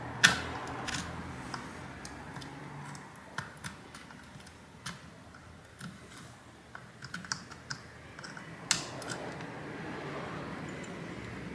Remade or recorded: recorded